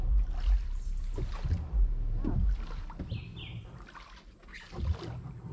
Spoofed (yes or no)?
no